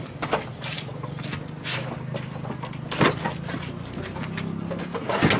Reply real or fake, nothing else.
real